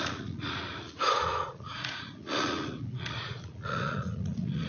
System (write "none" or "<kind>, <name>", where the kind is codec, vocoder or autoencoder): vocoder, Vocos